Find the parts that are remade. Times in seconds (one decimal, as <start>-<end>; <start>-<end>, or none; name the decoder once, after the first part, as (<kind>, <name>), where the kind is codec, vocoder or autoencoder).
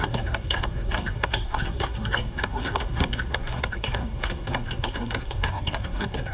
0.0-6.3 (codec, SNAC)